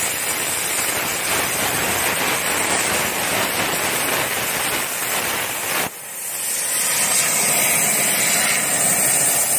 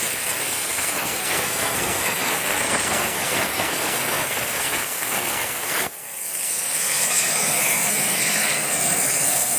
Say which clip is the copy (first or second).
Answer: second